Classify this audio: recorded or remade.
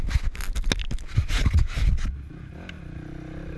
recorded